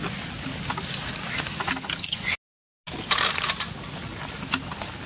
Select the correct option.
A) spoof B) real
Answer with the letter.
B